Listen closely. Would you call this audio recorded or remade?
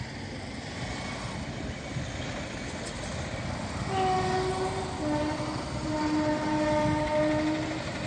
recorded